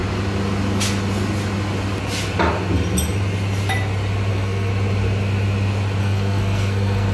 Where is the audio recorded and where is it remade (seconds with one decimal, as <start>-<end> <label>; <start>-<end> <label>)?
0.0-4.3 recorded; 4.3-4.7 remade; 4.7-6.0 recorded; 6.0-7.1 remade

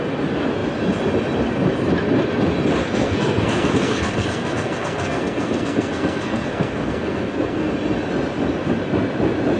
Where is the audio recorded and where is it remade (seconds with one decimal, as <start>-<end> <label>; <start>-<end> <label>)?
0.0-2.8 recorded; 2.8-7.7 remade; 7.7-9.6 recorded

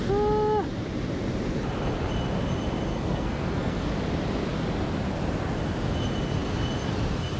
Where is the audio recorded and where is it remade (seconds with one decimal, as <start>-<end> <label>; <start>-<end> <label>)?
0.0-2.9 recorded; 2.9-3.9 remade; 3.9-7.4 recorded

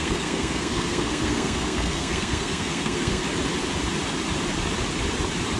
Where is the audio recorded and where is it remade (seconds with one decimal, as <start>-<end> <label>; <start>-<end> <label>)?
0.0-3.2 remade; 3.2-5.6 recorded